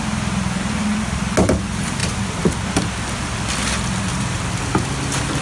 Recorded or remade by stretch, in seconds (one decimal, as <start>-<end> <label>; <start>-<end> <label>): 0.0-5.4 recorded